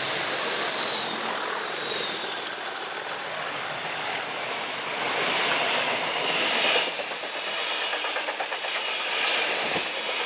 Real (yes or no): yes